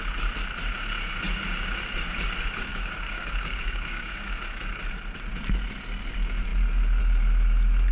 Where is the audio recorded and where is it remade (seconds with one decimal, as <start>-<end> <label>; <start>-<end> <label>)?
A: 0.0-2.7 recorded; 2.7-4.8 remade; 4.8-7.9 recorded